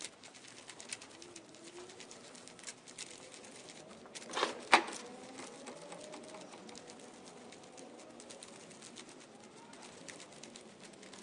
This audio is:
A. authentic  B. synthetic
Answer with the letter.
A